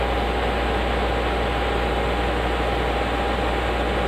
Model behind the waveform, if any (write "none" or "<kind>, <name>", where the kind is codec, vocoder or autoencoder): none